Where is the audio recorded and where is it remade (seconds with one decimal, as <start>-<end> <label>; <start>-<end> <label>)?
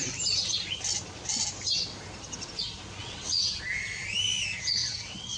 0.0-3.0 recorded; 3.0-3.6 remade; 3.6-4.8 recorded; 4.8-5.4 remade